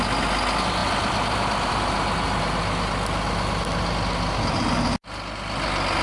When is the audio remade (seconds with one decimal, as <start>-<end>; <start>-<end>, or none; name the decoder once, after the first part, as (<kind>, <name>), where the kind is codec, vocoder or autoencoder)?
none